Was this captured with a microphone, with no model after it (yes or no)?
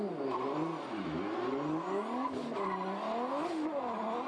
yes